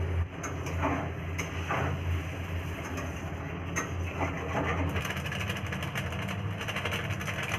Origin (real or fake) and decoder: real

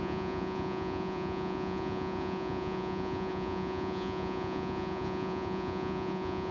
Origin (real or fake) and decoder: fake, vocoder, Vocos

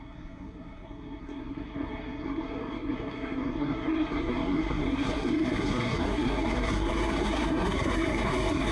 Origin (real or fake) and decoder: fake, codec, SNAC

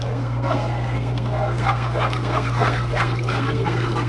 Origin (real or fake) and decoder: fake, codec, SNAC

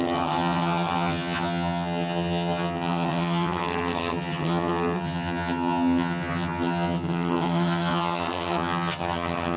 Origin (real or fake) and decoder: fake, vocoder, HiFi-GAN